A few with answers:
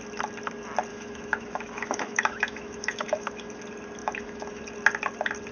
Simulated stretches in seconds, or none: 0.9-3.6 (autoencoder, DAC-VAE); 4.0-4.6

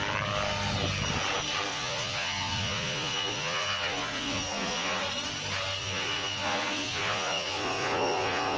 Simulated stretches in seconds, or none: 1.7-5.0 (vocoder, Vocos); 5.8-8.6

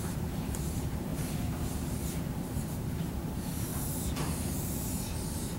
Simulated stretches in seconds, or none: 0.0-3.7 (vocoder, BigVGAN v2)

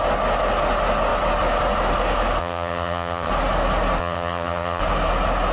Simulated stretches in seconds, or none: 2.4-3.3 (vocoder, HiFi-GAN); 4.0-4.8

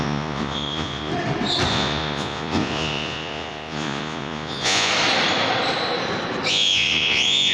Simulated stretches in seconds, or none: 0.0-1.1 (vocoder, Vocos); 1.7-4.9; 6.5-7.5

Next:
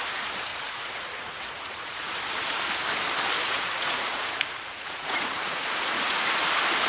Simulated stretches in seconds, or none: 0.5-2.1 (vocoder, Vocos); 3.4-6.4